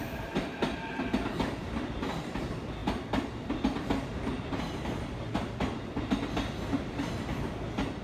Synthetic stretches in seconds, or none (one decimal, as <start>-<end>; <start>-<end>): none